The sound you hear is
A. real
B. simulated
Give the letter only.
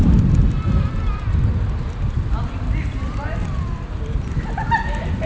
A